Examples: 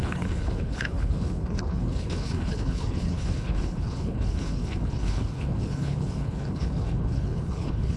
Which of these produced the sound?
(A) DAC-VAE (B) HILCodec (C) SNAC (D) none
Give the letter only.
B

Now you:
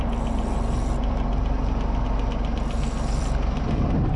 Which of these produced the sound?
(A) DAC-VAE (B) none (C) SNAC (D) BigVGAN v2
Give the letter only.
B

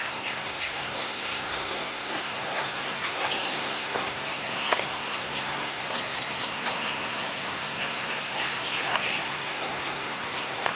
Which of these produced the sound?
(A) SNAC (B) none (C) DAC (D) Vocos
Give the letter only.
A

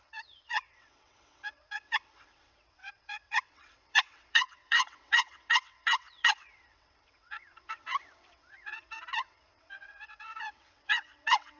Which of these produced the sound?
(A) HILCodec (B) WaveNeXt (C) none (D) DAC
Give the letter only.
B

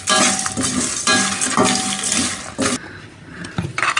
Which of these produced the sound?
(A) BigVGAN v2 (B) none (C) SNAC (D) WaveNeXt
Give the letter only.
B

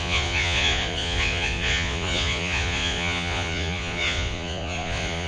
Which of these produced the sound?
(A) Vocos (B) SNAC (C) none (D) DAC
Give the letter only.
A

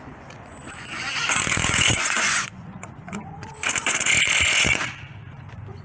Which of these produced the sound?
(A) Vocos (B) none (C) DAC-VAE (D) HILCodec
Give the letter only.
A